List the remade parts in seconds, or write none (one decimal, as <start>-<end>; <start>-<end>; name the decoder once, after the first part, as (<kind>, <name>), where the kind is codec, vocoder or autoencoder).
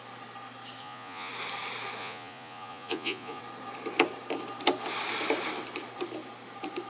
0.8-1.3 (vocoder, Vocos); 2.0-3.4